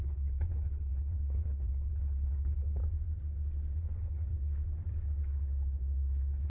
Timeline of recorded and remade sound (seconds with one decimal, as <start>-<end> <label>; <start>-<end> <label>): 0.0-2.8 remade; 2.8-3.8 recorded; 3.8-4.3 remade; 4.3-6.5 recorded